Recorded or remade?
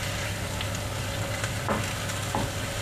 recorded